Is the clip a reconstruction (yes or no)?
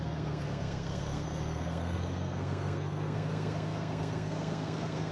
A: yes